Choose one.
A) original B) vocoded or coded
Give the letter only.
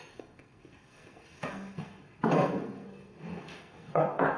B